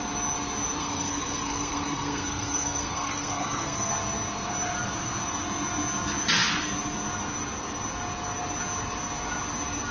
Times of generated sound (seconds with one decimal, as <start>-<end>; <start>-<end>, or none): 0.8-3.9